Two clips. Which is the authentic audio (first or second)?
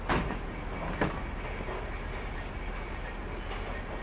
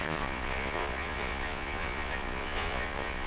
first